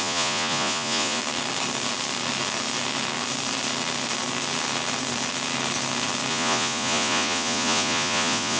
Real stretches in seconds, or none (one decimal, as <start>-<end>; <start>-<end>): 1.2-6.3